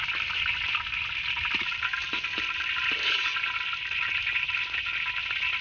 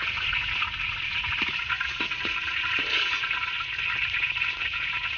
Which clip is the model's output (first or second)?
second